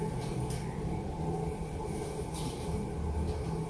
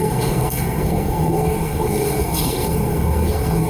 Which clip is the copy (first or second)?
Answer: second